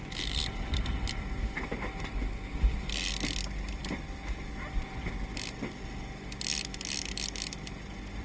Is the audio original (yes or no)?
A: yes